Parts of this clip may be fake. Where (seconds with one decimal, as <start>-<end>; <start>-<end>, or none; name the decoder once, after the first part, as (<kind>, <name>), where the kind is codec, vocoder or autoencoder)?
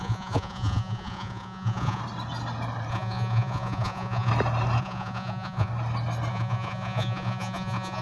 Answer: 0.0-2.0 (vocoder, Vocos); 2.9-4.3; 4.8-5.7; 6.3-8.0